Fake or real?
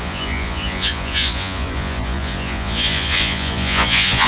fake